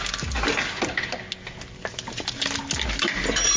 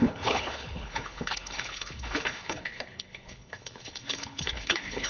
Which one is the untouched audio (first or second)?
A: first